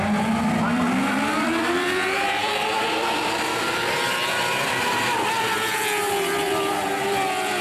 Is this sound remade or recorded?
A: remade